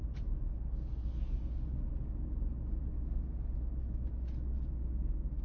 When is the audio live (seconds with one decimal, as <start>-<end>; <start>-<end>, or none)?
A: 0.0-5.4